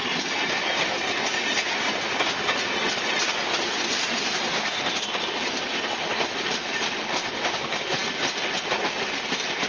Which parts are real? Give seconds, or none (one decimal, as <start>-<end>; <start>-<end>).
0.0-9.7